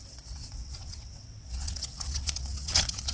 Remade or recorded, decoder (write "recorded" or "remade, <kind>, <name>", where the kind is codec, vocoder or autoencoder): remade, vocoder, WaveNeXt